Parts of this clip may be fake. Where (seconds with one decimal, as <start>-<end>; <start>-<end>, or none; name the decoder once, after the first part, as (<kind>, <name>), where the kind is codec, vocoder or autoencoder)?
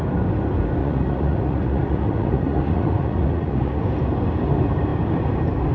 0.8-3.8 (vocoder, Vocos)